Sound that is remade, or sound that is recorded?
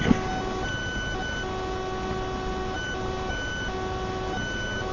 recorded